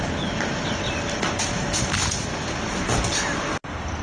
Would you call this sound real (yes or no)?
yes